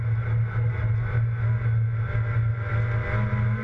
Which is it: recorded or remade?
recorded